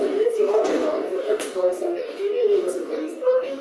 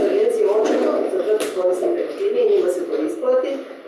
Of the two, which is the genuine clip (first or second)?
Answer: second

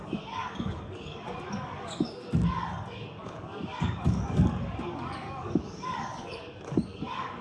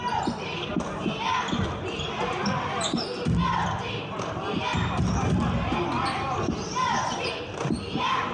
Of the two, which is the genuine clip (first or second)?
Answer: second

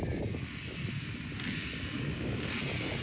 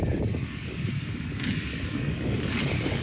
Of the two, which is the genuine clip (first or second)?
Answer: first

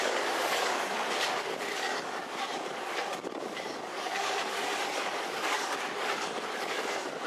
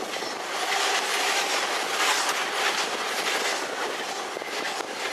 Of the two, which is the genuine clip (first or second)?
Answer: second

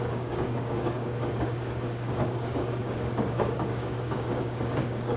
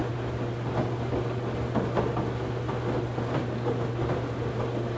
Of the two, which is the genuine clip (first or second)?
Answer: second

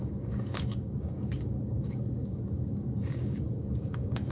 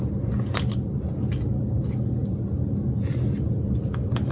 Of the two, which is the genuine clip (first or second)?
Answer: second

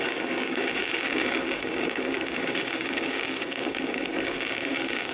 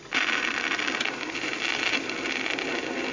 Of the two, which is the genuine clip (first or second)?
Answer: second